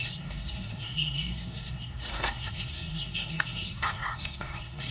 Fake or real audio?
fake